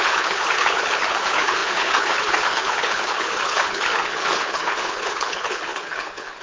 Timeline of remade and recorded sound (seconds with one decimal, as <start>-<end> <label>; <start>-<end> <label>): 0.0-6.4 remade